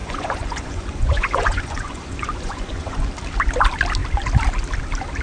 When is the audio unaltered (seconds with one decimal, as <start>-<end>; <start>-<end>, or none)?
3.1-5.2

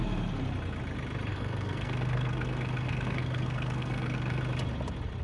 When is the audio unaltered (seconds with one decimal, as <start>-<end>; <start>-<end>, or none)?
0.0-1.3; 4.4-5.2

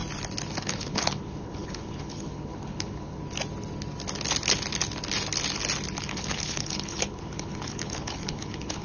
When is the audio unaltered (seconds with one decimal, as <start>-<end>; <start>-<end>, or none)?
0.0-0.6; 3.2-6.0